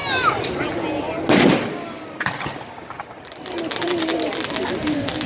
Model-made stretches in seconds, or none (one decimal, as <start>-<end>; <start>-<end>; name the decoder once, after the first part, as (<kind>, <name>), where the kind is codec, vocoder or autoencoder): none